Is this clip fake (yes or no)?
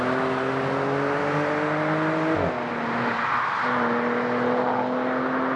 no